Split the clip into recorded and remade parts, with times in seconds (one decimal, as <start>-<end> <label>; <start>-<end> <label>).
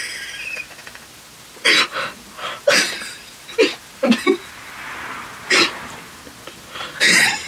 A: 0.0-7.5 recorded